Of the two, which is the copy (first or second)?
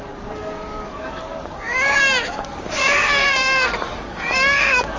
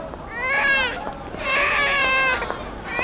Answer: first